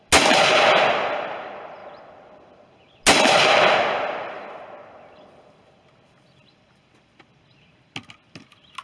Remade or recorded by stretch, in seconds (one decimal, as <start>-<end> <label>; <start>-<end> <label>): 0.0-8.8 recorded